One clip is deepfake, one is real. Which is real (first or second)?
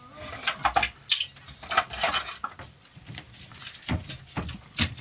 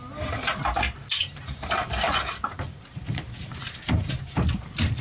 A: first